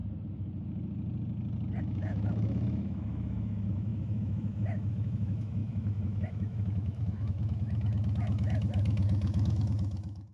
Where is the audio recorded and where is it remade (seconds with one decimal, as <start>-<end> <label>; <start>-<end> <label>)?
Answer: 0.0-1.8 recorded; 1.8-10.3 remade